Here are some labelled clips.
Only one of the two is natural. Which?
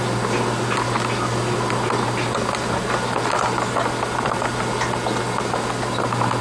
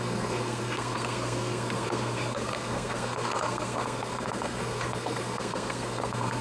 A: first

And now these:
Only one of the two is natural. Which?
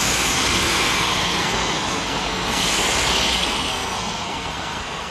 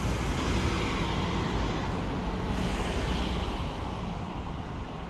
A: second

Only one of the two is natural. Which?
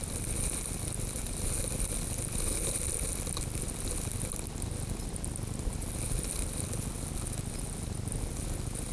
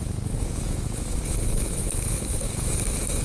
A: first